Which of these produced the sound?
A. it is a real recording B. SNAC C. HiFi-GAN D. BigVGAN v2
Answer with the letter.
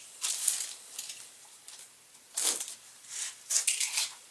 D